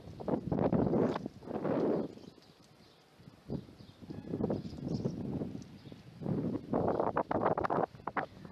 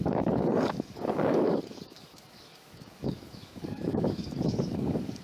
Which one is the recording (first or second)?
first